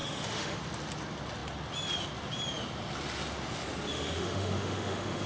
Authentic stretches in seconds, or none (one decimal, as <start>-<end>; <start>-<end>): 0.6-3.9